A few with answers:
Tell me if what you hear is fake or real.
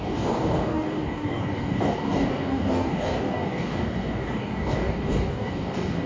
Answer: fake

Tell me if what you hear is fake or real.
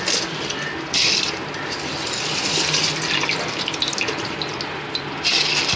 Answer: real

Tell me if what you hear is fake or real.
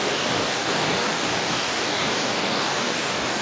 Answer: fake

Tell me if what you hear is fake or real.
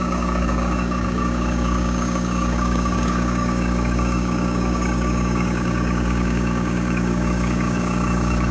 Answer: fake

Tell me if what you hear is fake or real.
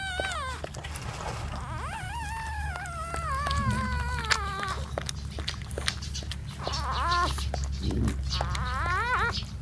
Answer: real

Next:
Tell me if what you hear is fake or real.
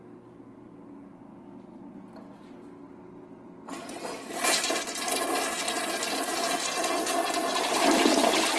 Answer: real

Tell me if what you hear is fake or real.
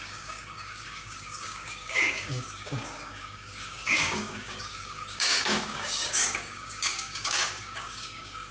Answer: fake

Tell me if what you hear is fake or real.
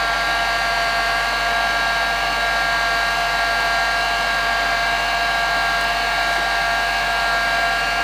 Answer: real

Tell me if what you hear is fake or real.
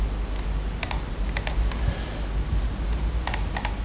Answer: real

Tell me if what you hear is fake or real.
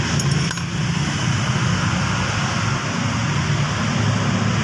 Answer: real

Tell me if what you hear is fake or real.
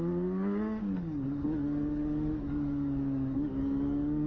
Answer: fake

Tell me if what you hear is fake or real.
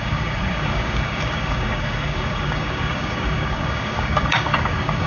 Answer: fake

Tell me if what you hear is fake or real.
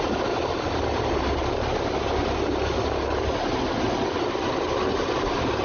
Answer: real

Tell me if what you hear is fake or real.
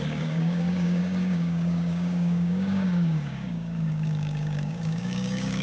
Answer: fake